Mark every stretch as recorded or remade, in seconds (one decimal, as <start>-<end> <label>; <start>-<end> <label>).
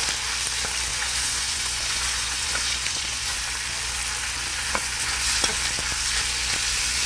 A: 0.0-0.9 recorded; 0.9-3.4 remade; 3.4-4.5 recorded; 4.5-5.5 remade; 5.5-7.1 recorded